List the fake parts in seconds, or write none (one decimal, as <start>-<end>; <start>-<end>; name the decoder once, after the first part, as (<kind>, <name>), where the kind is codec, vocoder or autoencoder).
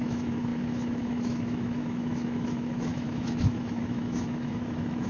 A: 0.0-5.1 (autoencoder, DAC-VAE)